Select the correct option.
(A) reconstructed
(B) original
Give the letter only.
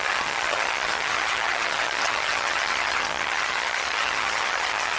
A